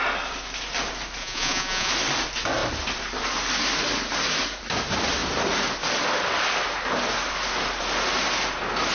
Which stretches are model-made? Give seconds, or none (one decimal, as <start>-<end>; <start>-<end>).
1.2-1.9